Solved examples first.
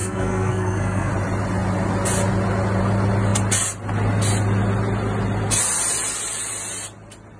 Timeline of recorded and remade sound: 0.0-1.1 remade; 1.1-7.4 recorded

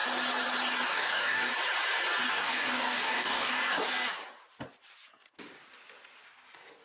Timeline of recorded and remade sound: 0.0-0.9 recorded; 0.9-1.5 remade; 1.5-2.3 recorded; 2.3-3.6 remade; 3.6-6.8 recorded

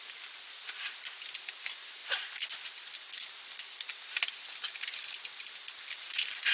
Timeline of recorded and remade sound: 0.0-2.0 remade; 2.0-5.9 recorded; 5.9-6.5 remade

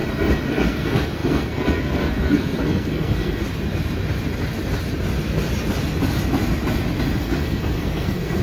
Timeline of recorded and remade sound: 0.0-0.5 recorded; 0.5-3.4 remade; 3.4-7.2 recorded; 7.2-8.4 remade